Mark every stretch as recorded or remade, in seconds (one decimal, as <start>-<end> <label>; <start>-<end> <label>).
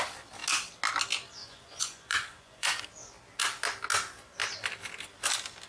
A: 0.0-1.4 recorded; 1.4-2.8 remade; 2.8-5.7 recorded